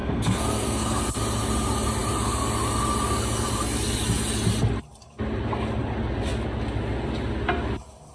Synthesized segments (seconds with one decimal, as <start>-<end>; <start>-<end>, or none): 0.0-1.0